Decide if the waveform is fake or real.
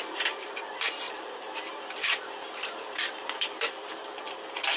fake